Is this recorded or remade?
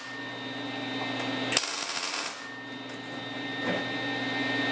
recorded